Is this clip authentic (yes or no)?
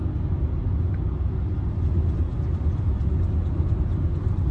yes